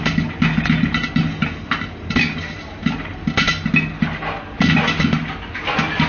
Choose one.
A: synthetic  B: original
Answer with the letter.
B